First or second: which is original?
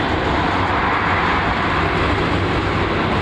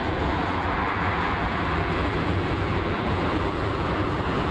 first